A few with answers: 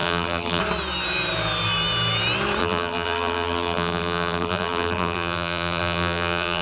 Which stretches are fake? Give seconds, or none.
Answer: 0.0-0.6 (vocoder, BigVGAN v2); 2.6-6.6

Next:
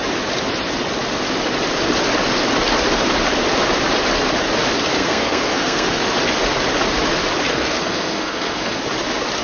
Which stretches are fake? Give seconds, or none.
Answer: 5.0-6.0 (codec, SNAC); 7.5-8.8

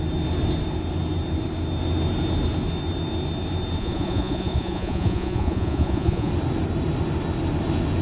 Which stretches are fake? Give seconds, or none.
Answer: 3.8-6.3 (vocoder, Vocos)

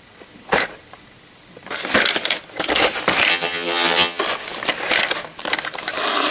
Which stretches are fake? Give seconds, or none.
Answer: 3.3-4.2 (vocoder, HiFi-GAN)

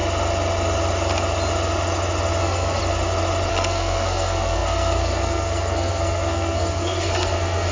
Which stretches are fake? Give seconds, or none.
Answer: 2.4-2.8 (codec, SNAC); 3.5-7.7

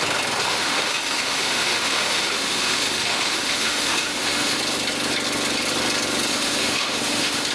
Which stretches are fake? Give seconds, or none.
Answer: 0.4-4.6 (autoencoder, DAC-VAE); 6.3-7.5

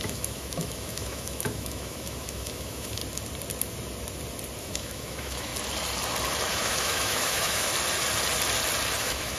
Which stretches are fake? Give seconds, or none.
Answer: 0.0-3.0 (autoencoder, DAC-VAE); 4.6-5.5; 6.5-7.7; 9.0-9.4

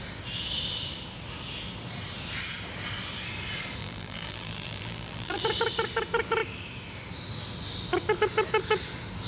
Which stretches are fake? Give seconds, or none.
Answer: 3.8-5.4 (vocoder, BigVGAN v2)